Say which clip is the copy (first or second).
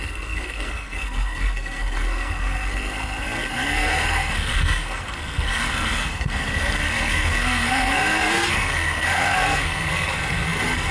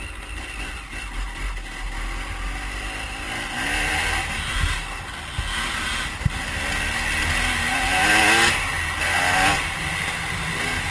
first